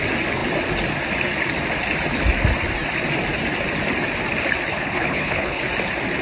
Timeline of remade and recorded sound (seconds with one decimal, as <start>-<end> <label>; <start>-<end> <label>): 0.0-4.7 recorded; 4.7-5.6 remade; 5.6-6.2 recorded